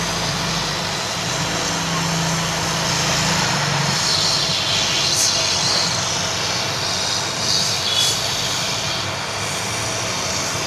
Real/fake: real